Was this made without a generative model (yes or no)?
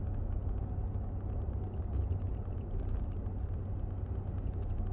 yes